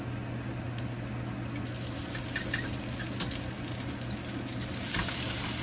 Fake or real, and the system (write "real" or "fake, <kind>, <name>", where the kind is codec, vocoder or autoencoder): real